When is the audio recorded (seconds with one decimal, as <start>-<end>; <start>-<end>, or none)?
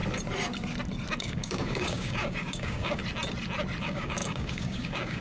0.0-1.2; 3.0-3.8